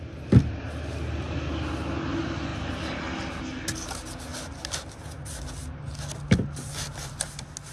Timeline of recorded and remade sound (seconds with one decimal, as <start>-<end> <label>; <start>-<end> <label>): 0.0-7.7 recorded